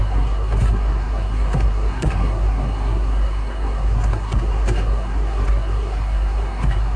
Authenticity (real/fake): fake